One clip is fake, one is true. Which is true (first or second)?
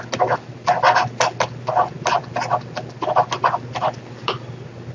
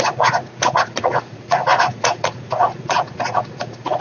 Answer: first